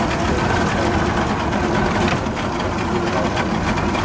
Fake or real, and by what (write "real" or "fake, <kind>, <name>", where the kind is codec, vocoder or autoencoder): real